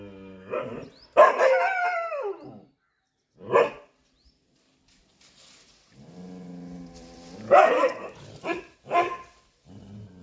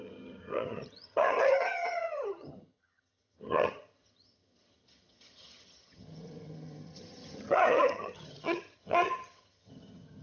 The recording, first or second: first